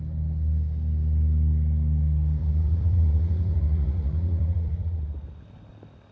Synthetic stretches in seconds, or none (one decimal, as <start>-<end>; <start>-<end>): 2.4-5.0